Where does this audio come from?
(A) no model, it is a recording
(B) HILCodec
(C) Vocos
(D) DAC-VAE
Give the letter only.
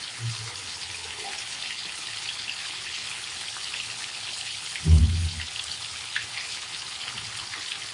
B